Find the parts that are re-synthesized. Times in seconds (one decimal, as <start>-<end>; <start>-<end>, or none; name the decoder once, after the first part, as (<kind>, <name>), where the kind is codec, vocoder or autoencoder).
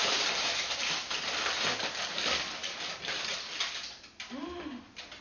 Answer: 0.0-0.5 (vocoder, BigVGAN v2); 1.0-1.6; 2.6-4.6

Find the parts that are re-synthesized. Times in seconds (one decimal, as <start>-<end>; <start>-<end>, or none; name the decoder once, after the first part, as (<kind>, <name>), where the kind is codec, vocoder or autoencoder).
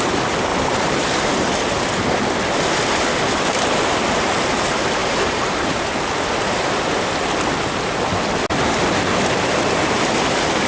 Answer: 0.5-1.3 (vocoder, BigVGAN v2); 5.0-5.7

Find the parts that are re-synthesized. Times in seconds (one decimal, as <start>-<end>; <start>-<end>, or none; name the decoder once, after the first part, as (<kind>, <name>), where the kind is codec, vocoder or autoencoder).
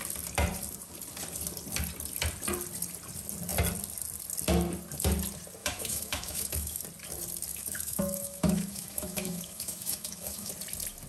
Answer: 5.6-6.8 (autoencoder, DAC-VAE); 7.5-10.5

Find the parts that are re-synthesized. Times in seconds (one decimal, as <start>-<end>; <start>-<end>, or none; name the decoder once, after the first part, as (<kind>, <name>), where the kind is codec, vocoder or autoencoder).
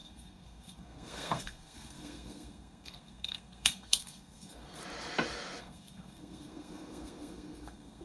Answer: 0.0-4.8 (codec, SNAC); 5.6-8.0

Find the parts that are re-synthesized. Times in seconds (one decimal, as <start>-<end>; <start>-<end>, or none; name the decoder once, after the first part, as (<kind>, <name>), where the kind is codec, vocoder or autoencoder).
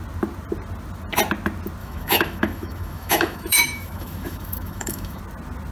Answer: 1.8-5.2 (autoencoder, DAC-VAE)